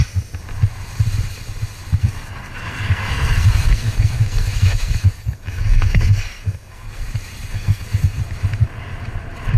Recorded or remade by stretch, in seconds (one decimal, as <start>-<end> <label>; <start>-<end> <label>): 0.0-2.0 recorded; 2.0-7.0 remade; 7.0-7.5 recorded; 7.5-8.2 remade; 8.2-9.6 recorded